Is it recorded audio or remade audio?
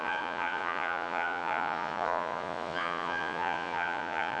remade